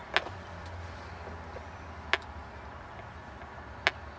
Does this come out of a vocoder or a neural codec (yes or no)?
no